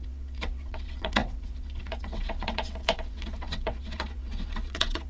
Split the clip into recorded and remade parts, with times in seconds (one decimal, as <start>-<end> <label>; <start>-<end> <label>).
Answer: 0.0-5.1 remade